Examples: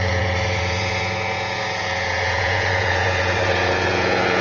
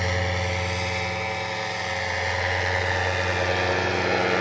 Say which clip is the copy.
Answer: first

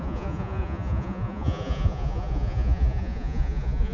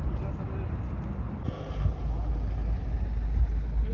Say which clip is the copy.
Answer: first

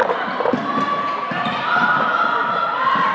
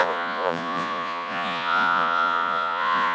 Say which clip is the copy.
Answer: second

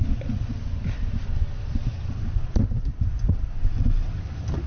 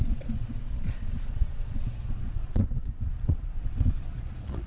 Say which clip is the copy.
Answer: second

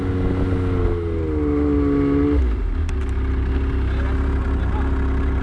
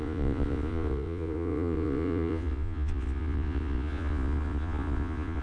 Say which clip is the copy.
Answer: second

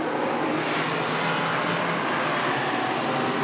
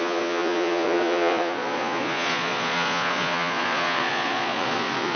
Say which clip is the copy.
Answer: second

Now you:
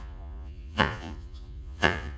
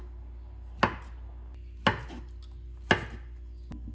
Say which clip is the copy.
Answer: first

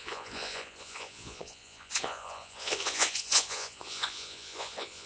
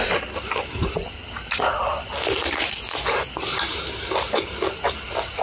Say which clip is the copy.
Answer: first